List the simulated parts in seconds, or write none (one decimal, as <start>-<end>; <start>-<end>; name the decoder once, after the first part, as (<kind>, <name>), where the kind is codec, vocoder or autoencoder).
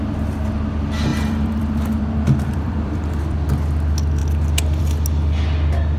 1.1-3.5 (vocoder, BigVGAN v2)